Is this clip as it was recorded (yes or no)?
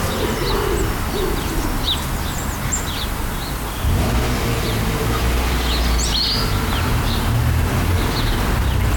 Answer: yes